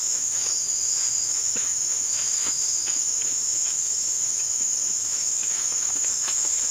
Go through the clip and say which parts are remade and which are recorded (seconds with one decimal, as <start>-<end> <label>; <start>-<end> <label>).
0.0-6.7 remade